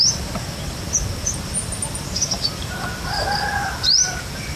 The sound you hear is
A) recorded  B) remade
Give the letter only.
B